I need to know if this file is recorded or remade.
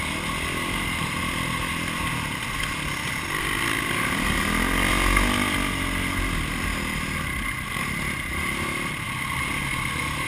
recorded